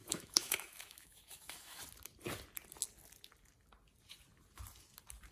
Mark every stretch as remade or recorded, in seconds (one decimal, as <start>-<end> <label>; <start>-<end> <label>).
0.0-1.8 remade; 1.8-5.3 recorded